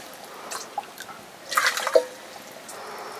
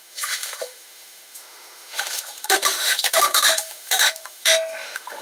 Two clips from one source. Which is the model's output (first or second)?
second